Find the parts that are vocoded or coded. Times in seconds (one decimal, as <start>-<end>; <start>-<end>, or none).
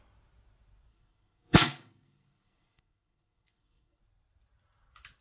0.9-4.0